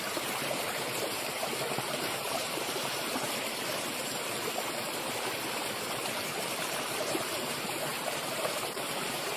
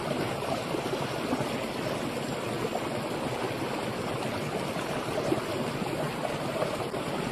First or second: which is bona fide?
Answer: second